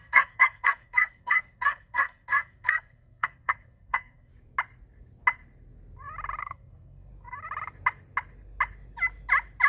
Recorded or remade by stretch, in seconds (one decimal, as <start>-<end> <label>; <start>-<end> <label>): 0.0-4.3 remade; 4.3-6.4 recorded; 6.4-7.1 remade; 7.1-9.7 recorded